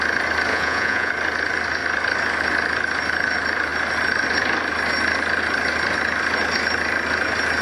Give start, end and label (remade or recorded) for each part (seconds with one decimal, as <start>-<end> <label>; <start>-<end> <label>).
0.0-0.5 recorded; 0.5-1.1 remade; 1.1-7.6 recorded

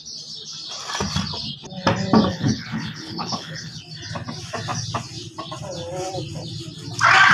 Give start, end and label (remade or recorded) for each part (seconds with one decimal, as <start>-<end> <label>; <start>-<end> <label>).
0.0-2.3 recorded; 2.3-3.8 remade; 3.8-7.3 recorded

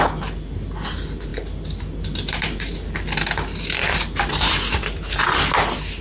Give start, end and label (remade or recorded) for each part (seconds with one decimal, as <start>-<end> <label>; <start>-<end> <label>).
0.0-6.0 recorded

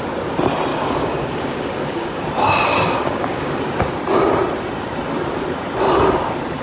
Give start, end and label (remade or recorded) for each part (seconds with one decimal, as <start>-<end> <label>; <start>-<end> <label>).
0.0-0.7 recorded; 0.7-2.2 remade; 2.2-2.7 recorded; 2.7-3.6 remade; 3.6-6.6 recorded

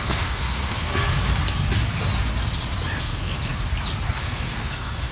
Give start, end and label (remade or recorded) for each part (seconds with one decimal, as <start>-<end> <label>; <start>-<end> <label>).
0.0-0.9 remade; 0.9-3.0 recorded; 3.0-3.5 remade; 3.5-4.2 recorded; 4.2-5.1 remade

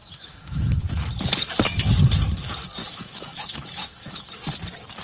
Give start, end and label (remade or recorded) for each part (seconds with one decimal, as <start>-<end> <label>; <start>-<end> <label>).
0.0-0.8 remade; 0.8-2.8 recorded; 2.8-4.3 remade; 4.3-5.0 recorded

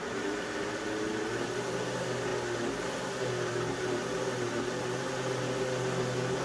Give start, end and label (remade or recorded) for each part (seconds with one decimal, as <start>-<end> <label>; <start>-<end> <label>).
0.0-1.1 remade; 1.1-6.4 recorded